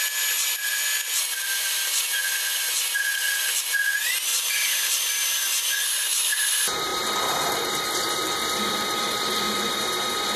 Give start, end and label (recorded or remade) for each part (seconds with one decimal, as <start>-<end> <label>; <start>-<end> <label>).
0.0-4.3 recorded; 4.3-4.9 remade; 4.9-6.9 recorded; 6.9-7.8 remade; 7.8-10.4 recorded